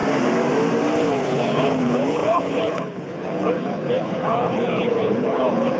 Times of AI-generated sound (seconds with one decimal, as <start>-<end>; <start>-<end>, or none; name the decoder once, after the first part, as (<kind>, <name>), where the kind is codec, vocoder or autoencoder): 1.0-5.8 (codec, HILCodec)